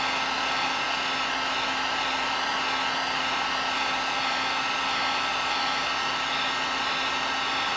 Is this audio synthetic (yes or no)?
no